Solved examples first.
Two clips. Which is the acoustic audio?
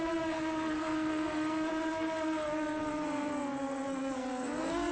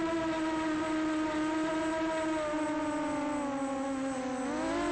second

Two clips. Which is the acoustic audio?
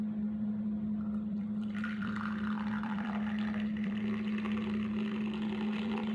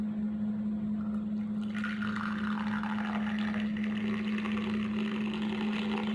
second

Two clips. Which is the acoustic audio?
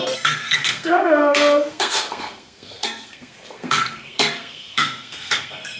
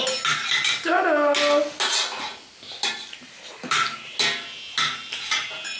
second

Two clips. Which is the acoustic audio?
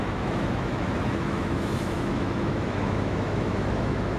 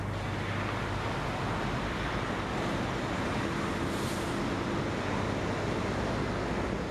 second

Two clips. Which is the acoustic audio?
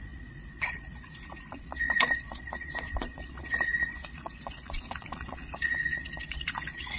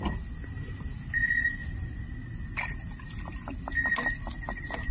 second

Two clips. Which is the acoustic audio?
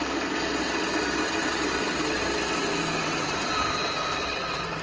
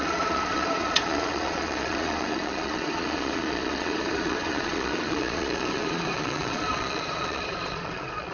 first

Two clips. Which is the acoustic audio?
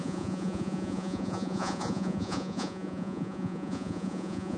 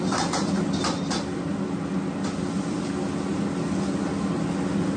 second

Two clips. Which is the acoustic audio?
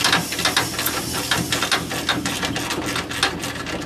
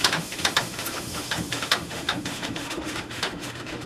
first